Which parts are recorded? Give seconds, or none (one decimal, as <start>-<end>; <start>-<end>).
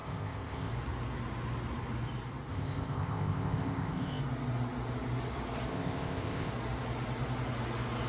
0.7-2.5; 4.2-5.7; 6.5-8.1